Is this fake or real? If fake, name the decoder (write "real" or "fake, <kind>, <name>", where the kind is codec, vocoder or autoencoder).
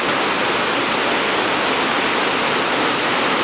real